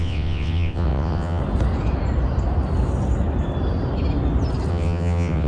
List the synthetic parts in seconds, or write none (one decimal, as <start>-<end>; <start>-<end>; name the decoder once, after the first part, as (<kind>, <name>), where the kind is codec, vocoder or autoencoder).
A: 0.0-1.4 (vocoder, WaveNeXt); 4.7-5.5